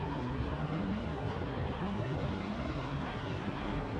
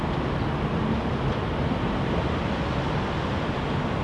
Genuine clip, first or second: second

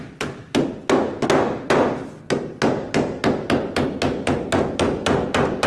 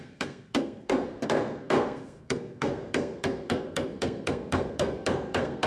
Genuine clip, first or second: first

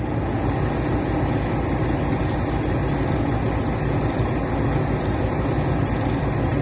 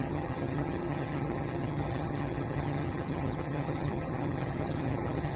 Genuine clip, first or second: first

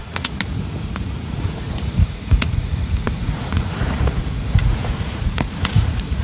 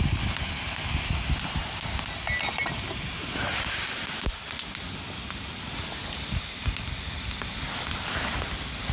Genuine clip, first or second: second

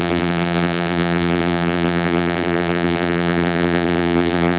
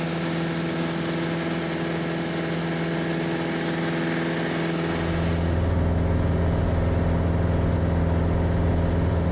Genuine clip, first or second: second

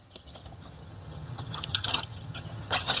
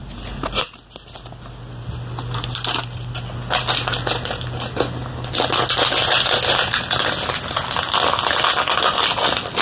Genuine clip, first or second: second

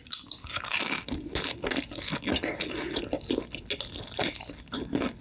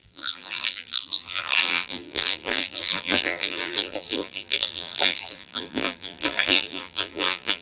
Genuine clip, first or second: first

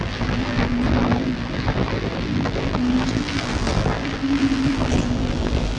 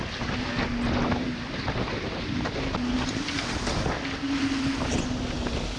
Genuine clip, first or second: second